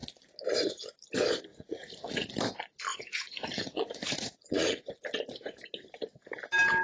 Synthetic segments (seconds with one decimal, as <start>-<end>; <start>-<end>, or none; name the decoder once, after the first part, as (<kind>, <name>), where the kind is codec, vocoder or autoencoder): 1.5-2.3 (vocoder, Vocos); 2.9-4.9